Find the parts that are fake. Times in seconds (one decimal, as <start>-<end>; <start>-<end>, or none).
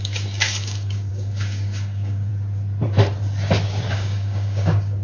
0.0-2.3; 3.9-5.0